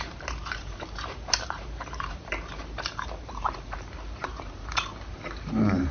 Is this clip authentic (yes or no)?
no